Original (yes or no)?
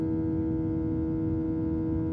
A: yes